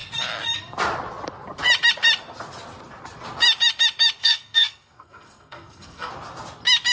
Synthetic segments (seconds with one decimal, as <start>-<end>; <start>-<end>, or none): 4.2-6.1